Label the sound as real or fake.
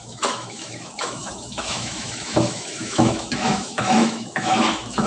fake